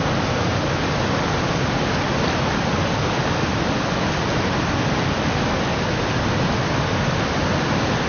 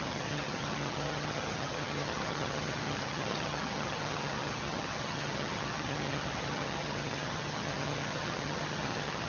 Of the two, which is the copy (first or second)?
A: second